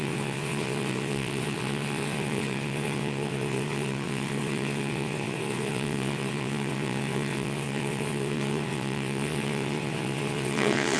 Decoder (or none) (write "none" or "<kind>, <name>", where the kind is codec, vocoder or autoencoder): vocoder, WaveNeXt